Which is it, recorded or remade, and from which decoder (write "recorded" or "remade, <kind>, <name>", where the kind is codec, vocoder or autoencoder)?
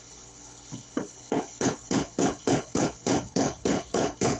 remade, codec, HILCodec